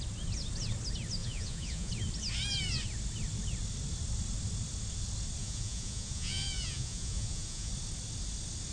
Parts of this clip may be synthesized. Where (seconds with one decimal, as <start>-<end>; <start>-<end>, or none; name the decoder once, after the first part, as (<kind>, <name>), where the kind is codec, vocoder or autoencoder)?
1.2-1.9 (vocoder, Vocos); 5.4-7.7